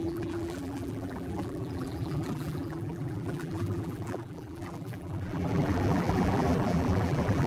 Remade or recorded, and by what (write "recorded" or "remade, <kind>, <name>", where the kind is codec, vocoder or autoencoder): remade, vocoder, BigVGAN v2